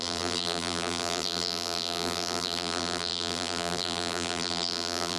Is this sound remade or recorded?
remade